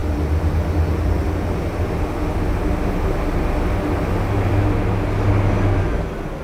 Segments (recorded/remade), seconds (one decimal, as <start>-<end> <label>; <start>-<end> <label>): 0.0-6.4 recorded